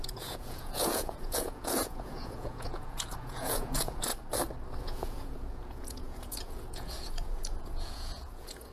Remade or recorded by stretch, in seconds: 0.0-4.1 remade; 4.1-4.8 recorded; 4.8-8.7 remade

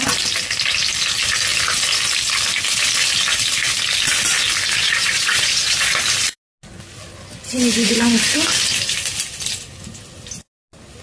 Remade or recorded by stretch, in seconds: 0.0-4.8 recorded; 4.8-5.9 remade; 5.9-11.0 recorded